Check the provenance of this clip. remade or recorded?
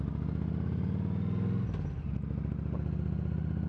recorded